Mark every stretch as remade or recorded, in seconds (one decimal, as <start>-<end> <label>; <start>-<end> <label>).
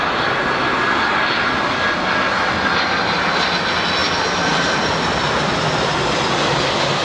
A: 0.0-7.0 recorded